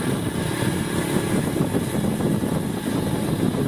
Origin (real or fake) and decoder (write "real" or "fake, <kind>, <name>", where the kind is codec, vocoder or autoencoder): real